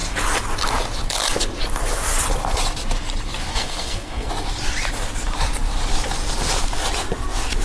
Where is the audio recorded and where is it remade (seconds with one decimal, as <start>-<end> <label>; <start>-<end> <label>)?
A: 0.0-3.5 recorded; 3.5-4.3 remade; 4.3-7.6 recorded